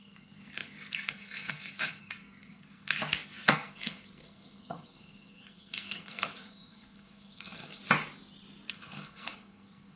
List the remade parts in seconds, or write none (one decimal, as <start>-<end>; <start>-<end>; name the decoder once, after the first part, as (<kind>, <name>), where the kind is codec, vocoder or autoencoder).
0.0-7.8 (codec, SNAC); 8.7-10.0